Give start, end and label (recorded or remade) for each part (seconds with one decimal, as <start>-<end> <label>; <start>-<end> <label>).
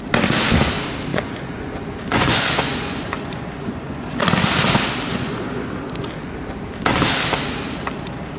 0.0-1.1 recorded; 1.1-4.2 remade; 4.2-5.1 recorded; 5.1-5.7 remade; 5.7-8.4 recorded